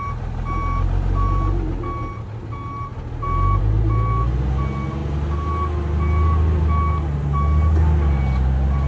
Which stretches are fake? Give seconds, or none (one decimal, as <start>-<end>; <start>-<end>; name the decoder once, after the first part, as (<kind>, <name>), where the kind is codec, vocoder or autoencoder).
none